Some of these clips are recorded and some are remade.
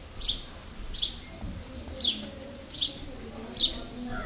recorded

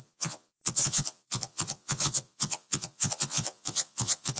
remade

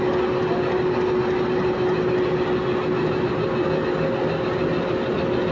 recorded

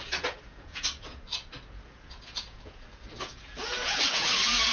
remade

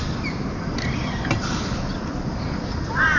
recorded